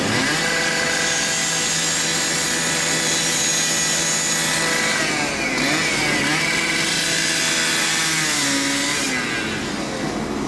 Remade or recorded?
recorded